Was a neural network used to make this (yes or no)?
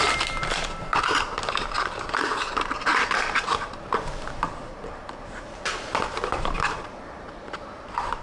yes